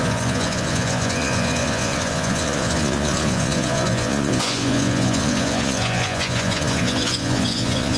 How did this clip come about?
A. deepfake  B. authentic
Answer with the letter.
A